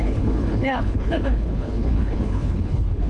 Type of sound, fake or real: fake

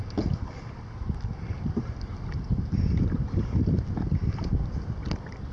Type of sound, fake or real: real